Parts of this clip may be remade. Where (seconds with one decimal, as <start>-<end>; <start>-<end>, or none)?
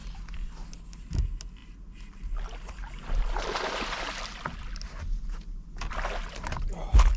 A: none